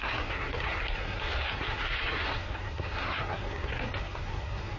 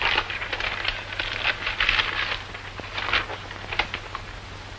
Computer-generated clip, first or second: first